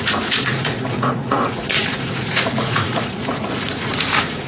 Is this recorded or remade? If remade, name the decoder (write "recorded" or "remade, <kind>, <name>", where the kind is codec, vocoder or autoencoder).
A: remade, vocoder, Vocos